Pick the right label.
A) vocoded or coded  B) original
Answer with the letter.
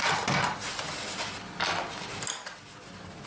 B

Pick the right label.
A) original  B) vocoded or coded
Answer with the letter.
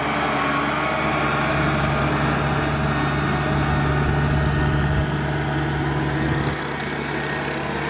A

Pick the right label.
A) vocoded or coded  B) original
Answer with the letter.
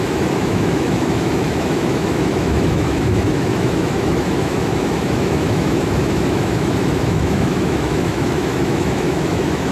A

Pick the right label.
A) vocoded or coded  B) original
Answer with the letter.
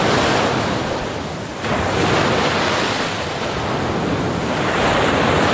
B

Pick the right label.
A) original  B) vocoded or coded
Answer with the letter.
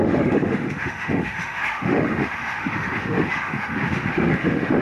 B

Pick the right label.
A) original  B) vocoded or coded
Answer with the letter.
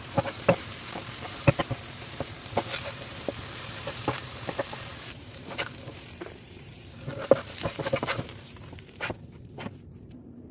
B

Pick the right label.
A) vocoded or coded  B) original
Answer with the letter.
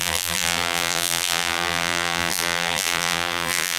A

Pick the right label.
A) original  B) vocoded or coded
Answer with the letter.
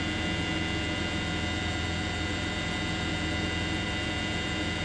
B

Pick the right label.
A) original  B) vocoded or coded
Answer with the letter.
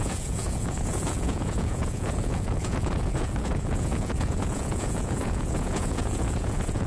B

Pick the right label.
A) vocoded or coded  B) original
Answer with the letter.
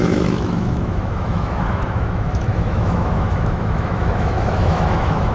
A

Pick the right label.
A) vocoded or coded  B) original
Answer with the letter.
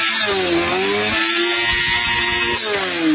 B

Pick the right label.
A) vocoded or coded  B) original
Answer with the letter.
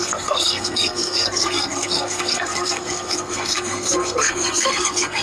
A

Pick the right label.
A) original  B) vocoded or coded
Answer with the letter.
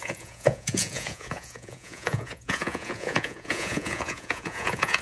B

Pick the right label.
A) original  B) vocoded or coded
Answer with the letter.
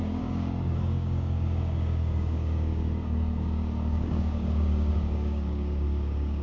B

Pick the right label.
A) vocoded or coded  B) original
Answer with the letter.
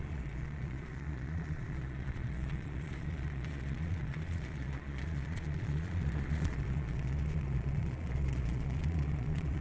A